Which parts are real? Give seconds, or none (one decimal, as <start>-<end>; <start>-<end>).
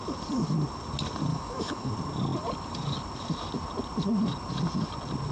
0.0-1.3; 1.9-5.3